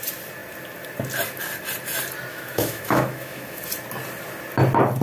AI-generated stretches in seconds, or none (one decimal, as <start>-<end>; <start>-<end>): 2.3-3.6